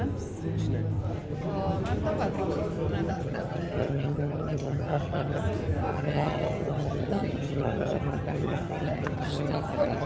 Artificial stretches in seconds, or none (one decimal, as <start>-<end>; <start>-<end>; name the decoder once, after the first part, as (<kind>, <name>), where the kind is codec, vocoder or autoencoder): 3.1-5.4 (vocoder, HiFi-GAN); 5.9-10.1